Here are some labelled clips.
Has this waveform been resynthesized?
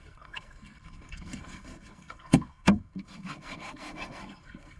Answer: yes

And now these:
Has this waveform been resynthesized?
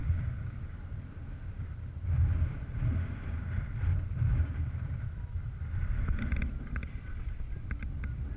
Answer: no